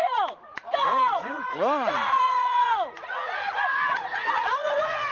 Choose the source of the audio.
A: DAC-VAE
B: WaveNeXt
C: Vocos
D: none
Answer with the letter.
C